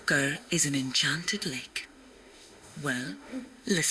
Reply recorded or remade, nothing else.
remade